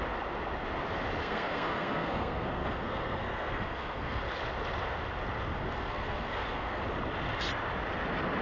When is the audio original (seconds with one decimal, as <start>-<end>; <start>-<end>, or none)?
0.0-1.2; 4.2-5.5; 6.8-8.4